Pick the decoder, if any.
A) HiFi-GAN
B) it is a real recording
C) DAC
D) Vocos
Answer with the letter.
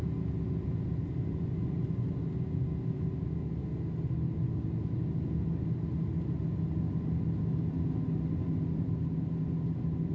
B